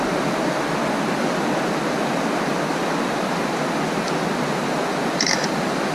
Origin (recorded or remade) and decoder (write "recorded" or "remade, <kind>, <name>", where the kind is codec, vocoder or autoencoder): recorded